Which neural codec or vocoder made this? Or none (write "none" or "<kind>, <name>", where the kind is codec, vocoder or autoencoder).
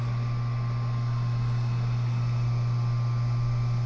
none